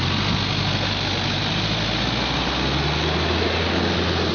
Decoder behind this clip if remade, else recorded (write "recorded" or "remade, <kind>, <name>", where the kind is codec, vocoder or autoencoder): recorded